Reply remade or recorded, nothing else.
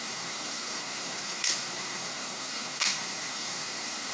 remade